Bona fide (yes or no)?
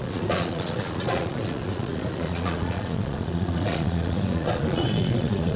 no